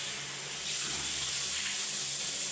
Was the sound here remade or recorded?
recorded